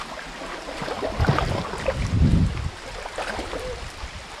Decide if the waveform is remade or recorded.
remade